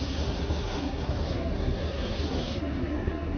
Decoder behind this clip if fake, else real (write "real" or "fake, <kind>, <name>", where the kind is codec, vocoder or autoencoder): fake, codec, SNAC